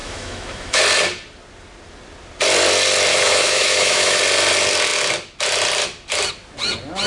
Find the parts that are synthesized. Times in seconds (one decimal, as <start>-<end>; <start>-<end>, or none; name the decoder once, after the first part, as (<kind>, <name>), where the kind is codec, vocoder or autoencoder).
0.0-0.8 (autoencoder, DAC-VAE); 3.1-4.2